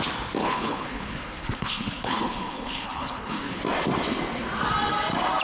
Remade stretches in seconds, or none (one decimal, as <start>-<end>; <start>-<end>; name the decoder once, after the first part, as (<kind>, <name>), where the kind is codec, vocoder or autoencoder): 0.4-3.6 (codec, HILCodec)